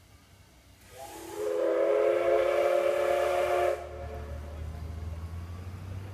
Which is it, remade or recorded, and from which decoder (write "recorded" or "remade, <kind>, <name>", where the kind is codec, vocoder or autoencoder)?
recorded